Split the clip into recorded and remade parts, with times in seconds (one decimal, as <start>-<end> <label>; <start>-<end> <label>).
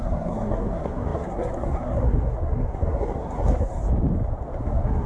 0.0-3.8 remade; 3.8-4.6 recorded; 4.6-5.1 remade